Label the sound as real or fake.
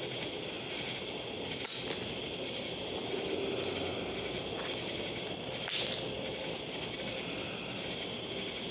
real